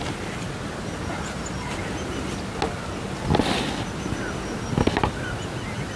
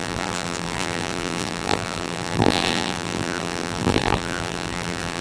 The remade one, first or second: second